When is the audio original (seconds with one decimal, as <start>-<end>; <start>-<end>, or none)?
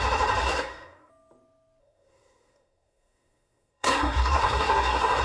0.0-0.4; 1.1-1.8